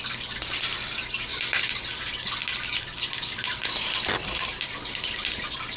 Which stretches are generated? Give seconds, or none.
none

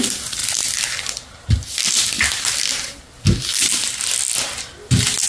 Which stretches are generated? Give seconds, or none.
none

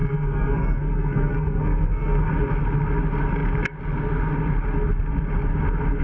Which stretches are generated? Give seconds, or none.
0.0-2.3 (codec, SNAC)

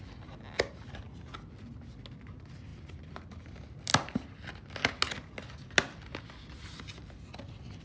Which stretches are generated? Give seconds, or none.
none

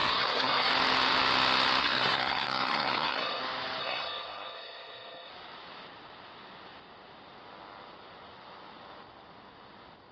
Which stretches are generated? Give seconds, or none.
0.0-0.7 (codec, SNAC); 1.8-3.4; 3.8-5.3